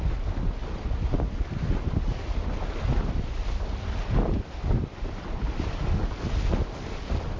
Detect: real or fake real